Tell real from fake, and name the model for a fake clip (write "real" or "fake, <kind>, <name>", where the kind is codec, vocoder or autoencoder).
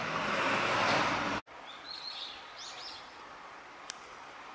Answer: real